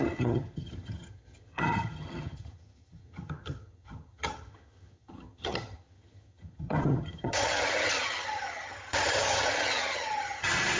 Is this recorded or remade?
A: remade